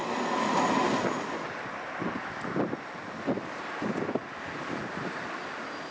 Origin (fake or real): real